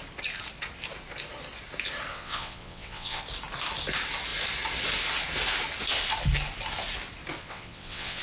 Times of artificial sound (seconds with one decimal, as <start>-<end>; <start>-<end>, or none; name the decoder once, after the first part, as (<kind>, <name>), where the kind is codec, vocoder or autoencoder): 2.1-3.2 (vocoder, WaveNeXt); 7.4-8.2